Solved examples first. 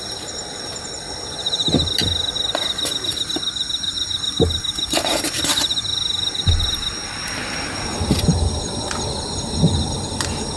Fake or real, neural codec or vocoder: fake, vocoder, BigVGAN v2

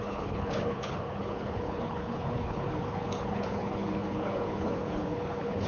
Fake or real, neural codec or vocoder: fake, codec, HILCodec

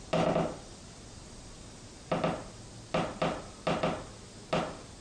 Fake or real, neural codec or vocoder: real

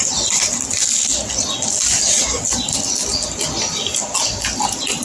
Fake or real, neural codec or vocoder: real